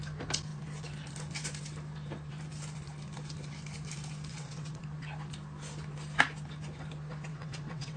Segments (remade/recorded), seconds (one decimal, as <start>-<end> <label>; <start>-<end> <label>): 0.0-4.3 recorded; 4.3-4.8 remade; 4.8-7.3 recorded; 7.3-8.0 remade